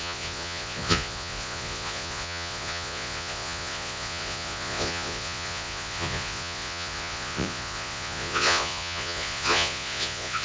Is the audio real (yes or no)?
no